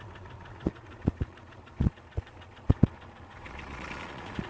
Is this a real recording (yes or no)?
no